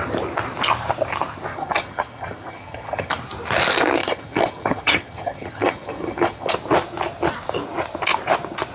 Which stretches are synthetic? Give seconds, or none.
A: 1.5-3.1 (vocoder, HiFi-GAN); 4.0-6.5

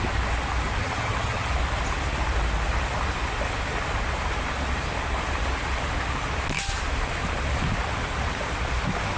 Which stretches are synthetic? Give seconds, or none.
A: 0.8-1.5 (vocoder, HiFi-GAN)